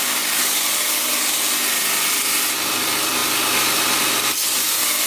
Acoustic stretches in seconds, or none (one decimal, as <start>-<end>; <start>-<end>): 1.4-5.1